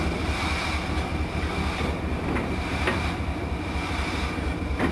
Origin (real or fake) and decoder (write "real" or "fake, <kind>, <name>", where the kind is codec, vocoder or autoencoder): real